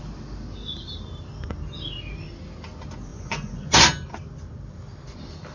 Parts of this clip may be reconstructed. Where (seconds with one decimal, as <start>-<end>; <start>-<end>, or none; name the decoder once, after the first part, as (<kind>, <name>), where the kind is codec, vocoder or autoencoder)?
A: 3.1-3.7 (vocoder, Vocos)